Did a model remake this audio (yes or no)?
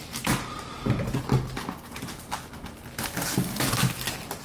no